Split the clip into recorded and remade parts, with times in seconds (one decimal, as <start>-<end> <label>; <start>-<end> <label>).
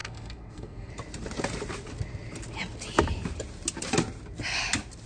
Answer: 0.0-0.9 remade; 0.9-5.1 recorded